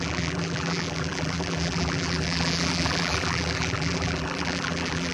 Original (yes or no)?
no